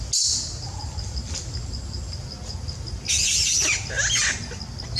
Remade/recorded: recorded